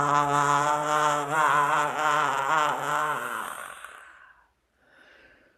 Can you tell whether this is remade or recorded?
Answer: remade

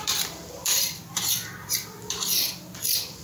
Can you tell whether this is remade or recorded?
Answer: remade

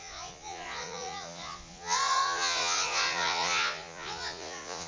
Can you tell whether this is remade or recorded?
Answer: remade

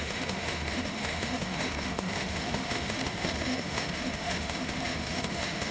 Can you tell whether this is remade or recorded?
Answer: remade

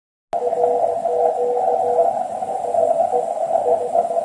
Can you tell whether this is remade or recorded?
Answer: recorded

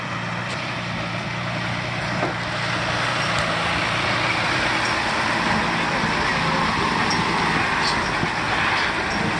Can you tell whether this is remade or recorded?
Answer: recorded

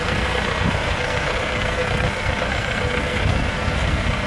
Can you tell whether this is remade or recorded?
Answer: remade